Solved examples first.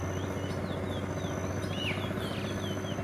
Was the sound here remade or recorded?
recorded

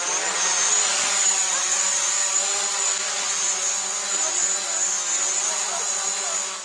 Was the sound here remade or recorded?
recorded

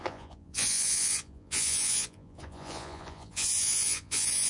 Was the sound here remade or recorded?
remade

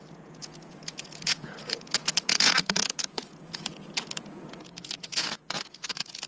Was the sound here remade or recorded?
remade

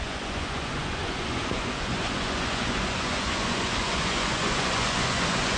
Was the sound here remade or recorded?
remade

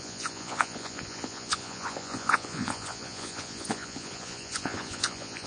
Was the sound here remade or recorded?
remade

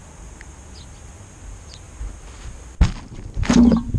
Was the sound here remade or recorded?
recorded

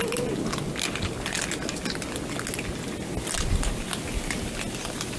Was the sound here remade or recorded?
recorded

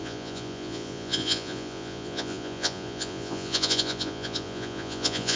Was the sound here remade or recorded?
remade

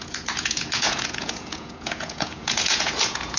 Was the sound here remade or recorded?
remade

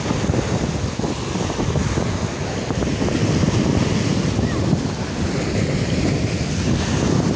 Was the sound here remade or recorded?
recorded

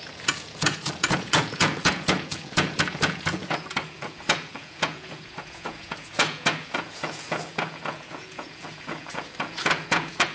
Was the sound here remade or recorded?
remade